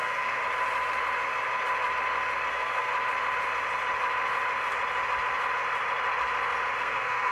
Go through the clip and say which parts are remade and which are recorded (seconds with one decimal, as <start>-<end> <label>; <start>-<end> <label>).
0.0-0.4 remade; 0.4-2.5 recorded; 2.5-2.9 remade; 2.9-6.8 recorded; 6.8-7.3 remade